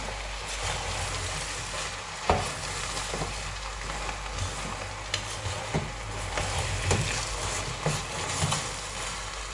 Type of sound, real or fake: real